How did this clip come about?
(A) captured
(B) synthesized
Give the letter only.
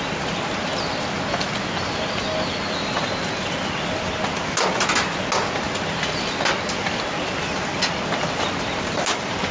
A